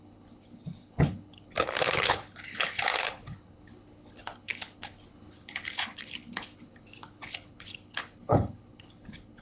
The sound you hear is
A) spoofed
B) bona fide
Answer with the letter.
A